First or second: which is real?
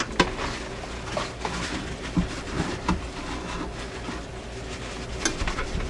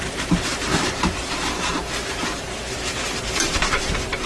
first